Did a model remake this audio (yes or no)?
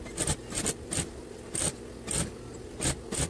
no